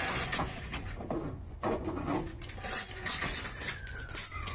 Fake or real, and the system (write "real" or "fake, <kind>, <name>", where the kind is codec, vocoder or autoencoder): fake, vocoder, Vocos